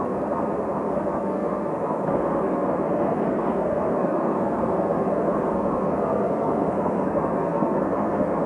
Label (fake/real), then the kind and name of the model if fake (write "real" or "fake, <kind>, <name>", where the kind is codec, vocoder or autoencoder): fake, codec, SNAC